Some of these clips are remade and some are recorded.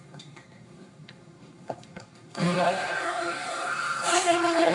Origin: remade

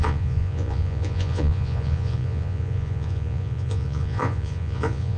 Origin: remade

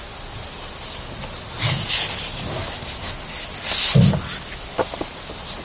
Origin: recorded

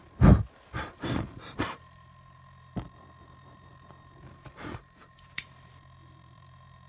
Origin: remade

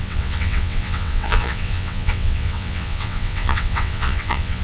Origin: remade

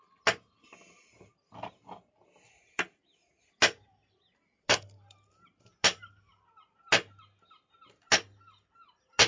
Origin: recorded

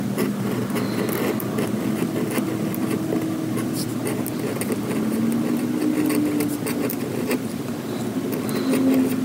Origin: recorded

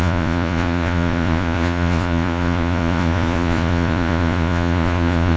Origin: remade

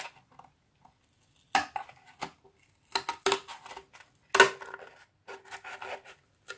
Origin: recorded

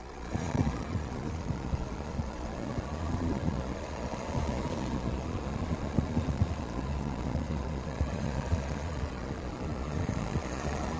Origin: remade